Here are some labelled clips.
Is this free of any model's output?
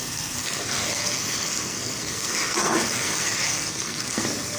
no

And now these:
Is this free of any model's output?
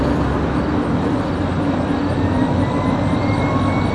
yes